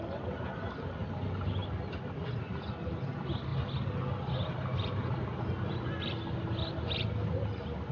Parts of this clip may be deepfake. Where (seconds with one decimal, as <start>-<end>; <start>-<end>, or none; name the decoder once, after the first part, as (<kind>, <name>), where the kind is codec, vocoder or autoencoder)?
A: none